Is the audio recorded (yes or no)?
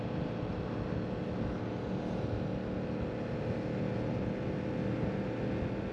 yes